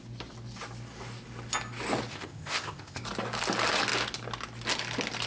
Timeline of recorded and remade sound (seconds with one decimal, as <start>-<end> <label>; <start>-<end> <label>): 0.0-2.1 recorded; 2.1-3.0 remade; 3.0-5.3 recorded